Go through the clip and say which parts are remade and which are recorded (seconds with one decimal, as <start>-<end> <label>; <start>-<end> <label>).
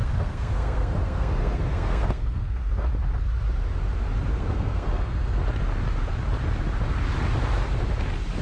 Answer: 0.0-2.9 remade; 2.9-4.3 recorded; 4.3-5.4 remade; 5.4-8.4 recorded